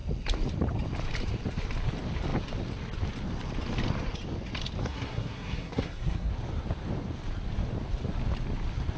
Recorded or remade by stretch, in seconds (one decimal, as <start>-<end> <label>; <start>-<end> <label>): 0.0-4.8 recorded; 4.8-6.3 remade; 6.3-9.0 recorded